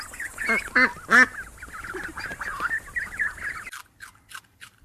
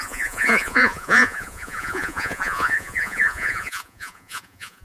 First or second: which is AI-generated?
second